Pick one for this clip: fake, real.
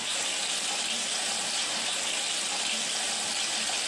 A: fake